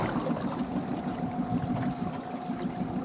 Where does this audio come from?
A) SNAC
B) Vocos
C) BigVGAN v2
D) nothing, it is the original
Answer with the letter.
D